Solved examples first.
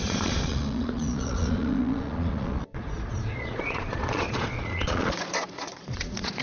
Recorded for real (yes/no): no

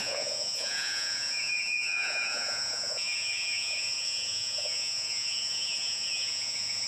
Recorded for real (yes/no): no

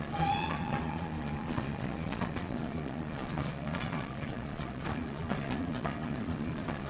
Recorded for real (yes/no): no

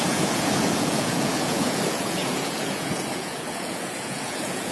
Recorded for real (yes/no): no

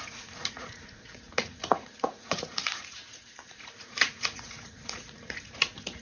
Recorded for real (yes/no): no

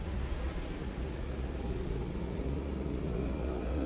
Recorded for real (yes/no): no